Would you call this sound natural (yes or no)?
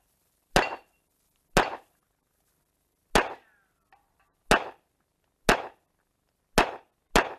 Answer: yes